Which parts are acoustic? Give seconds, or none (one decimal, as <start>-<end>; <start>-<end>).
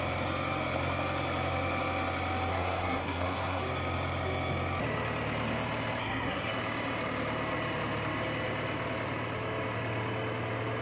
0.0-2.5; 3.6-6.0; 6.5-10.8